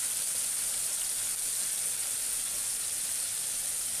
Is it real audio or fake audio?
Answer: real